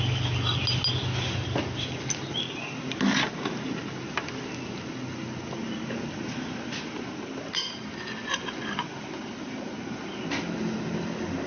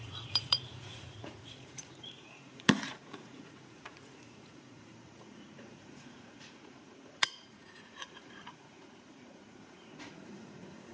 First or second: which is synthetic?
second